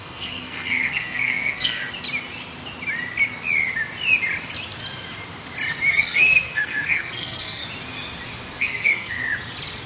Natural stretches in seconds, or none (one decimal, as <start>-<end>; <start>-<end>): 1.8-5.9; 7.6-8.6; 9.2-9.9